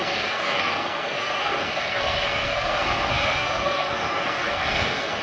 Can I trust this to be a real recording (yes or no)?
no